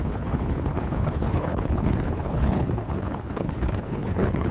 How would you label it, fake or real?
fake